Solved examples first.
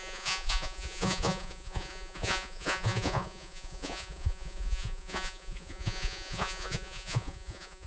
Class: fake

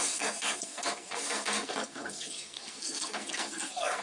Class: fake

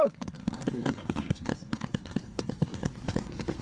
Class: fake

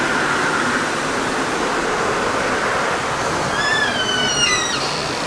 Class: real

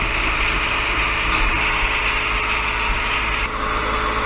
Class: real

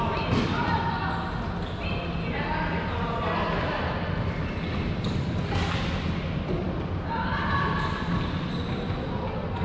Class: real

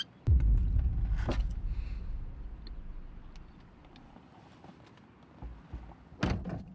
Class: real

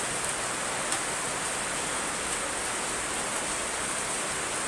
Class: real